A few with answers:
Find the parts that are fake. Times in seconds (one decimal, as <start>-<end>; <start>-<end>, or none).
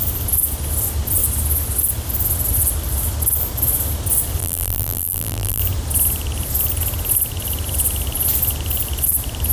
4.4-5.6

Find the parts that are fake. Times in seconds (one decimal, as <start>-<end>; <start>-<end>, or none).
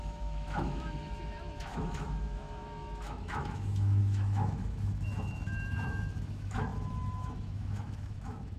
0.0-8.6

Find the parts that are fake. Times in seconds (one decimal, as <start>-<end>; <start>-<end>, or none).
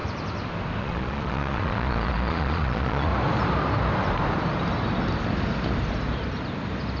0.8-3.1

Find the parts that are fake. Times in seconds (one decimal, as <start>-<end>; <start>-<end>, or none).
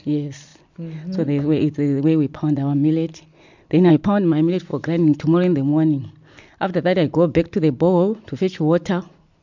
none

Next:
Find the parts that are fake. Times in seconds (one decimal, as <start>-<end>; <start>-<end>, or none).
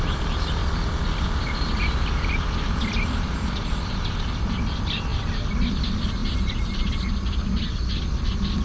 none